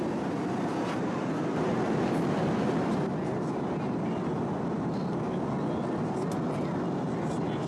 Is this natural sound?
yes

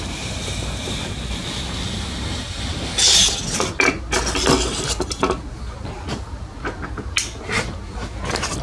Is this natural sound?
yes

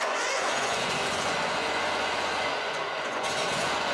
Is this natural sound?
no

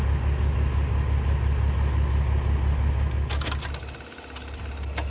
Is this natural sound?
yes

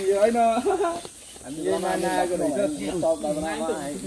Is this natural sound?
yes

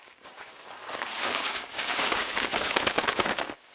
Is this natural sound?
no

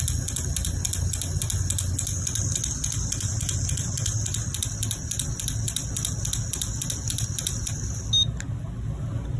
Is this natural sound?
yes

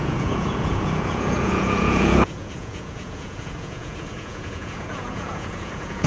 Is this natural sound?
no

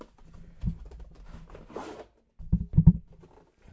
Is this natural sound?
yes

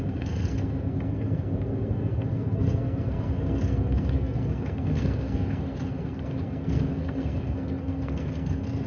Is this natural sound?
no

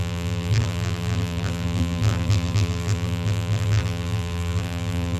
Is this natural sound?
no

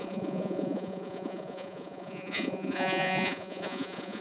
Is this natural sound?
no